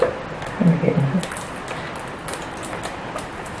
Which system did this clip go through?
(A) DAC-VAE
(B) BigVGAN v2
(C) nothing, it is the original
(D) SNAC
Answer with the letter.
C